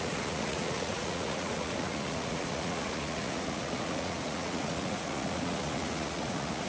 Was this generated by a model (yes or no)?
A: yes